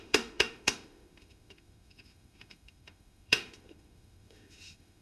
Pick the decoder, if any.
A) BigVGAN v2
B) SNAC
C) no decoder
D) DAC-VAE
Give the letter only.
D